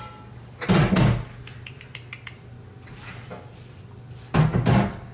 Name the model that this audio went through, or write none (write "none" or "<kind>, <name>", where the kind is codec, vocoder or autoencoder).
none